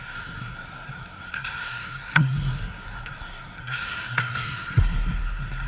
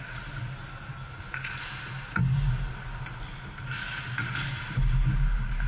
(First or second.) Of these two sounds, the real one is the second